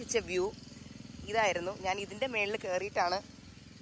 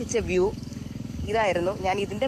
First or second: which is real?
first